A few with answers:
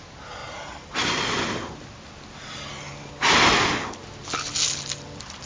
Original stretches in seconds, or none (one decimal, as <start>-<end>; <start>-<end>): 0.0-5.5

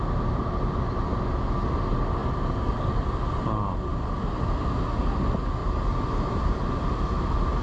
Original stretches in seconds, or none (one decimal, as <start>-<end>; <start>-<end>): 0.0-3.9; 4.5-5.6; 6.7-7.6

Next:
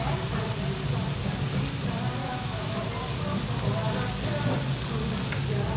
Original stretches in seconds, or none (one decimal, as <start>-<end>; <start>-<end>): 0.0-2.2; 2.8-5.8

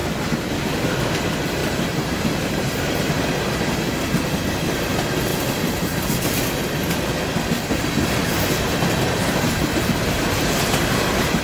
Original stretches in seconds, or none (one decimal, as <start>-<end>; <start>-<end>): 0.0-1.6; 3.3-5.3; 6.1-8.2

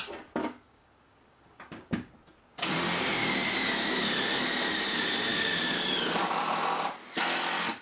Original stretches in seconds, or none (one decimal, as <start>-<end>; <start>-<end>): 0.0-0.4; 2.1-5.3; 6.2-7.8

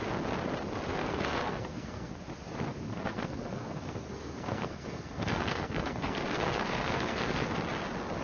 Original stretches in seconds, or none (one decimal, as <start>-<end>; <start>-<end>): 0.0-1.0; 2.1-2.9; 7.5-8.2